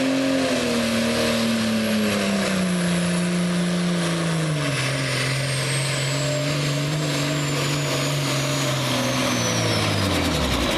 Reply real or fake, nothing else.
real